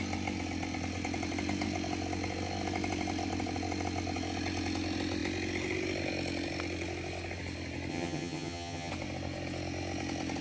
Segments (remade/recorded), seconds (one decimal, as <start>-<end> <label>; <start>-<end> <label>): 0.0-7.9 recorded; 7.9-8.9 remade; 8.9-10.4 recorded